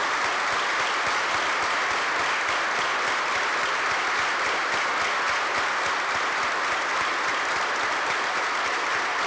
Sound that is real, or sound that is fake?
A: real